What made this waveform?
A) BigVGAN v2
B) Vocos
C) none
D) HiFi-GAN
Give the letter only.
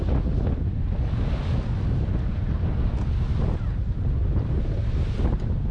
C